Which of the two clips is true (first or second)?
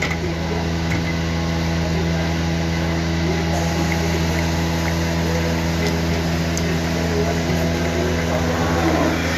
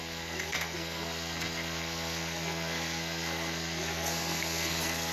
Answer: first